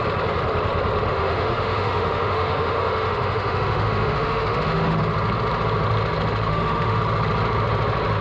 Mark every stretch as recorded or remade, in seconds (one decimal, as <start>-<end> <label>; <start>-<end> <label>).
0.0-1.1 recorded; 1.1-5.0 remade; 5.0-6.5 recorded; 6.5-7.0 remade; 7.0-8.2 recorded